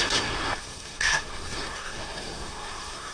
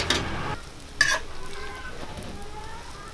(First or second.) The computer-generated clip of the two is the first